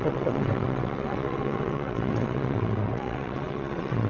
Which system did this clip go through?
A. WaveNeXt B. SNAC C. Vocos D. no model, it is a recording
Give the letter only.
A